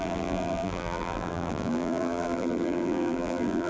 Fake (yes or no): yes